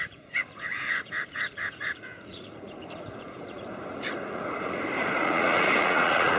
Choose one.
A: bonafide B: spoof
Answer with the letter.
B